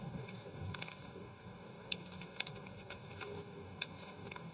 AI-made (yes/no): yes